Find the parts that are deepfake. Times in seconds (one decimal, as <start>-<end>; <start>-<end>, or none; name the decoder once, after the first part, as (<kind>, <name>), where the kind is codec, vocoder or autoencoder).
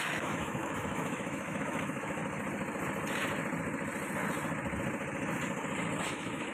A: 0.0-2.2 (autoencoder, DAC-VAE); 6.1-6.5